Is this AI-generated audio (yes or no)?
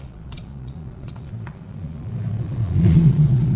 yes